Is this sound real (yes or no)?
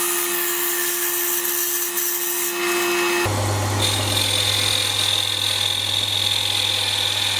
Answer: yes